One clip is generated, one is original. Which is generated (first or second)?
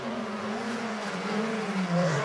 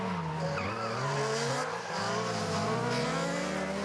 first